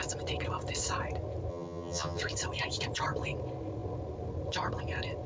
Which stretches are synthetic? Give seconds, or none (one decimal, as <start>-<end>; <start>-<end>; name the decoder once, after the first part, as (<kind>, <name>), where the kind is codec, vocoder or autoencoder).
1.5-2.2 (vocoder, HiFi-GAN)